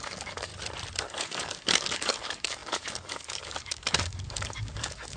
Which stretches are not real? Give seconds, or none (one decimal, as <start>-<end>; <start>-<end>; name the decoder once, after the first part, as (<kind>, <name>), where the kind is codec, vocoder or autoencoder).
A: 0.0-0.5 (codec, DAC); 1.0-5.2